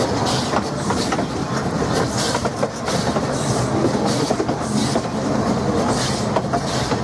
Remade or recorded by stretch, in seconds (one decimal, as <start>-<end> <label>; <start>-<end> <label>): 0.0-4.8 recorded; 4.8-5.7 remade; 5.7-7.0 recorded